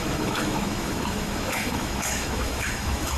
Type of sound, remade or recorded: remade